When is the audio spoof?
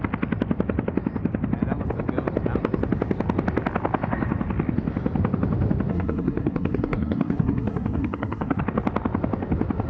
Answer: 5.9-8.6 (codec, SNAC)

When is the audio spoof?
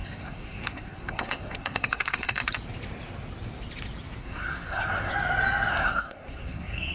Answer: 0.0-2.4 (codec, SNAC); 4.2-5.1; 5.7-6.9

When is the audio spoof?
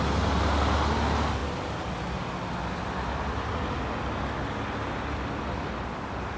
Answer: none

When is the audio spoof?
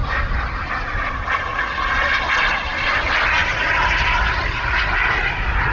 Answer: 1.5-2.3 (vocoder, Vocos)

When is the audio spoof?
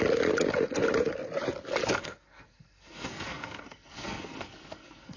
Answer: 2.0-5.2 (codec, SNAC)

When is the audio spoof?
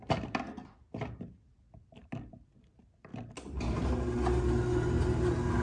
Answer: none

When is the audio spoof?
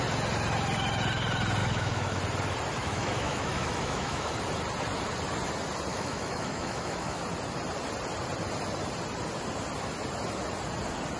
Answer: 1.6-2.2 (autoencoder, DAC-VAE); 2.8-4.3; 5.9-7.2